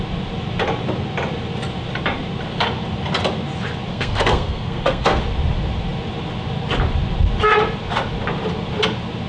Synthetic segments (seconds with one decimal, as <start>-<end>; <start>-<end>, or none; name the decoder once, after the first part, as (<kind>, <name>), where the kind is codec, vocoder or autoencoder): 3.9-5.2 (codec, SNAC)